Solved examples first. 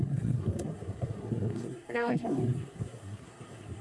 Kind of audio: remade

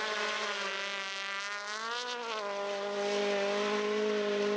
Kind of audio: recorded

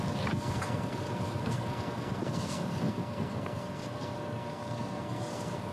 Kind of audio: remade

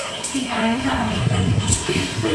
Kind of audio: remade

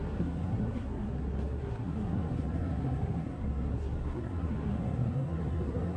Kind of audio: remade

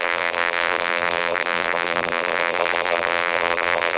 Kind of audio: remade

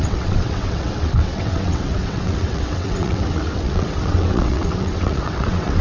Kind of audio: remade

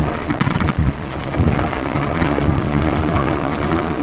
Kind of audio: remade